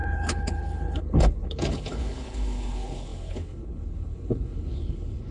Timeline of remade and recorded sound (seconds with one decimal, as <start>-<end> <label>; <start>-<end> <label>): 0.0-5.3 remade